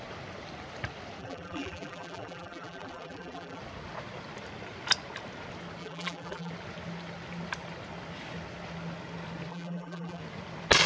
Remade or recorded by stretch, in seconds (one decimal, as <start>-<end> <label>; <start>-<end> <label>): 0.0-1.2 recorded; 1.2-3.6 remade; 3.6-5.8 recorded; 5.8-6.5 remade; 6.5-9.5 recorded; 9.5-10.2 remade; 10.2-10.9 recorded